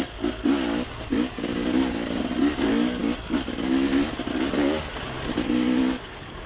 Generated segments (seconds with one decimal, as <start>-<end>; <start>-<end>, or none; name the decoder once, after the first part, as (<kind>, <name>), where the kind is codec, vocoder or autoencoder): none